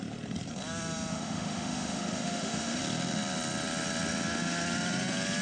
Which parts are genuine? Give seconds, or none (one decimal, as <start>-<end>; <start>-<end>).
0.0-1.1; 2.8-5.4